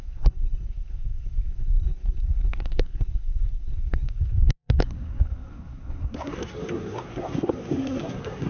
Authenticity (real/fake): fake